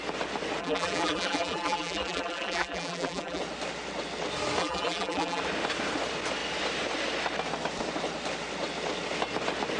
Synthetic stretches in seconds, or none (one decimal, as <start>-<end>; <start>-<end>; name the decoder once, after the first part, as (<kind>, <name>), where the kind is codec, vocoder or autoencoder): 0.6-3.4 (vocoder, BigVGAN v2); 4.6-5.4